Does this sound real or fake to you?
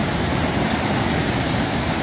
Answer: fake